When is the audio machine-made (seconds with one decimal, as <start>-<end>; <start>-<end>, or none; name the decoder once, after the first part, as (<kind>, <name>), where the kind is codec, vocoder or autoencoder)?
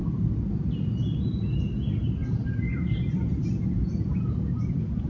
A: 3.8-5.1 (vocoder, Vocos)